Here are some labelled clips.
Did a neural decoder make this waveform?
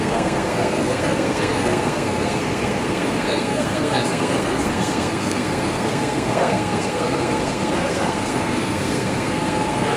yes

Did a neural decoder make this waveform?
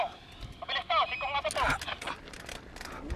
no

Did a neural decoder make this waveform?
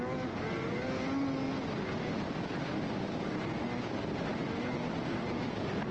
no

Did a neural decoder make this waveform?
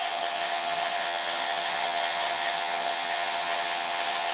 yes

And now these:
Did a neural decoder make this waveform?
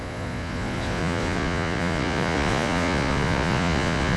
yes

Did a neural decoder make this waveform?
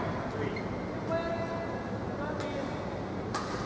no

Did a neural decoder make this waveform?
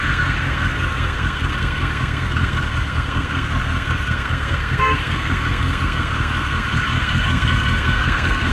yes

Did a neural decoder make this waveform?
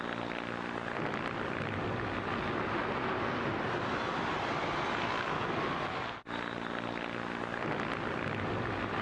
no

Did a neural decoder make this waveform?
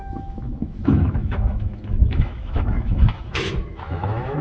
yes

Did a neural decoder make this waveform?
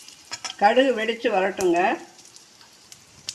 yes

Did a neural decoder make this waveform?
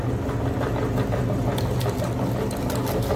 no